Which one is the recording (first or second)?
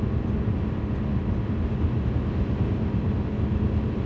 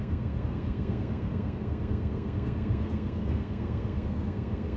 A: first